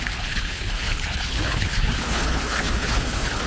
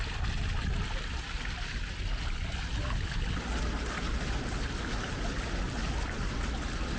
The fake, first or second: first